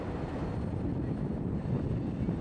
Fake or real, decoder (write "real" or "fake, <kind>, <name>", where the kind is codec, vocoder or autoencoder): real